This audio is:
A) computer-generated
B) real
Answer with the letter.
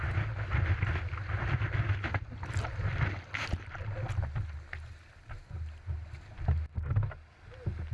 B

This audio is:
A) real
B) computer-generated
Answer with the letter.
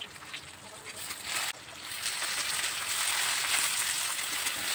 A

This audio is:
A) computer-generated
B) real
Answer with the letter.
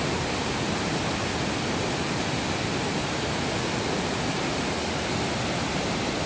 B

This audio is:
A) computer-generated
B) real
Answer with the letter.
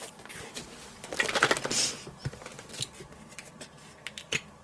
B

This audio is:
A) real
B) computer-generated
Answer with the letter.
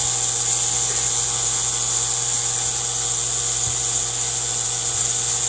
A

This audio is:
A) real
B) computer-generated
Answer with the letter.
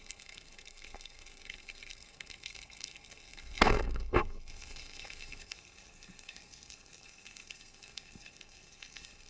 B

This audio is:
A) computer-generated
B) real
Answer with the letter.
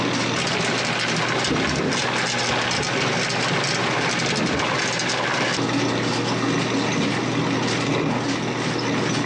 B